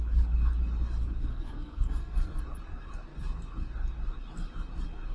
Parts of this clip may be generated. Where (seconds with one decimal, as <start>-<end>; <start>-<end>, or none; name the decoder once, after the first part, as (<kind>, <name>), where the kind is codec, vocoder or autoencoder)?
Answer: 1.3-2.4 (codec, SNAC)

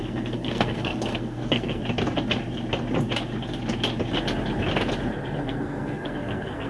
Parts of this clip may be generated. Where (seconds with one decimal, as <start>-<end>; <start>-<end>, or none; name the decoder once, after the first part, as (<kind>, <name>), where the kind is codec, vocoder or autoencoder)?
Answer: 0.0-1.8 (codec, SNAC); 5.4-6.7

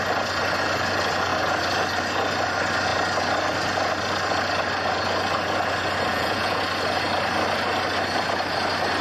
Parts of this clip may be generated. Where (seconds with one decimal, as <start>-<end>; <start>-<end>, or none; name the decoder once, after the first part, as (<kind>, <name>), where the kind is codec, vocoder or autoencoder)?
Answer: 6.1-6.6 (vocoder, Vocos)